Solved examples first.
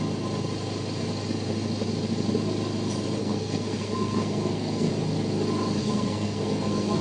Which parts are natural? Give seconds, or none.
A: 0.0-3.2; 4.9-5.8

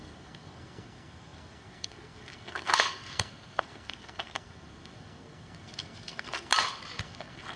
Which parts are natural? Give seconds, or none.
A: 6.5-7.0

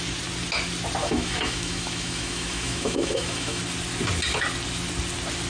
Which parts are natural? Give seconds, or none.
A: 0.0-1.0; 3.6-5.5

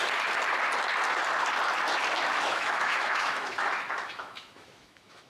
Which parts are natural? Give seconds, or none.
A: 0.0-2.3